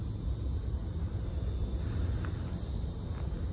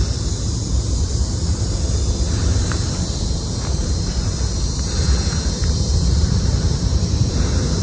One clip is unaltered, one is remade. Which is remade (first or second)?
second